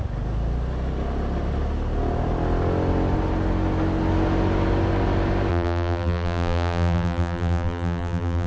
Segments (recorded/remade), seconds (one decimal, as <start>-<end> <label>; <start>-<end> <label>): 0.0-5.5 recorded; 5.5-8.5 remade